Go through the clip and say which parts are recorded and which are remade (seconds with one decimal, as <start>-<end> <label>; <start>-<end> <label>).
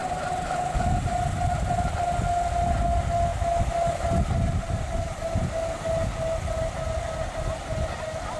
0.0-1.0 remade; 1.0-8.4 recorded